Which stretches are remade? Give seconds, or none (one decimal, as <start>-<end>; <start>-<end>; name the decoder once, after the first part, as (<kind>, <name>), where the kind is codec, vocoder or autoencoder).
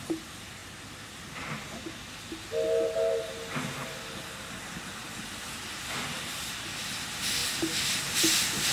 none